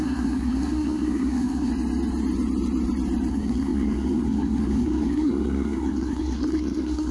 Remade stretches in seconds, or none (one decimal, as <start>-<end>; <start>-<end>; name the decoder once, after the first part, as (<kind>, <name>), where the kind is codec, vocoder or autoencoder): 0.0-1.7 (codec, SNAC); 3.3-7.1